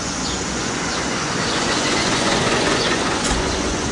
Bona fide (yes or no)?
no